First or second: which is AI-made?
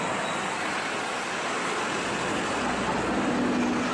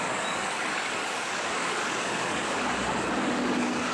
second